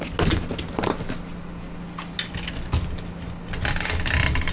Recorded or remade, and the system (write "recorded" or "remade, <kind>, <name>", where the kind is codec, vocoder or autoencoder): recorded